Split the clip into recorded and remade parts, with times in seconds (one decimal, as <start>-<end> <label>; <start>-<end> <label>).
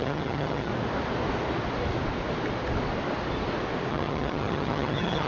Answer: 0.0-0.7 remade; 0.7-3.9 recorded; 3.9-5.3 remade